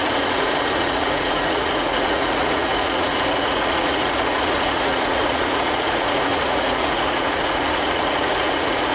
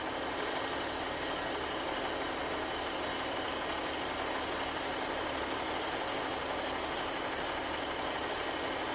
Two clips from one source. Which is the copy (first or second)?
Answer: first